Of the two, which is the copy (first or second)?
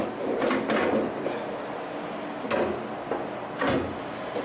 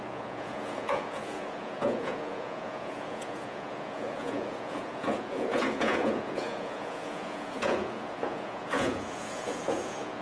second